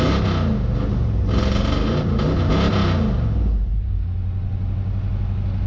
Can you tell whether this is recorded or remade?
recorded